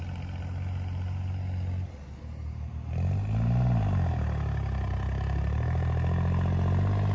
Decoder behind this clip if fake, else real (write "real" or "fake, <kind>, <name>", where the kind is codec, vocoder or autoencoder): real